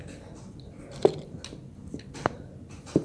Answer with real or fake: real